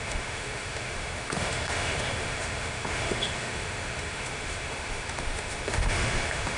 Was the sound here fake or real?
fake